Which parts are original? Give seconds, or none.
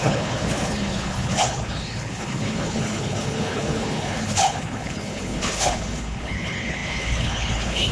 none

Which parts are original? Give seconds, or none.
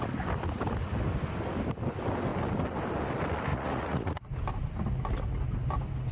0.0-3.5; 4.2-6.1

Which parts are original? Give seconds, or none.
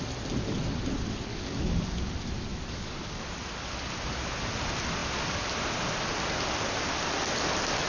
0.0-1.3; 2.1-2.5; 3.3-7.9